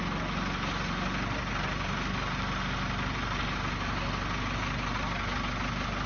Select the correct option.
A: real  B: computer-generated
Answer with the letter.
A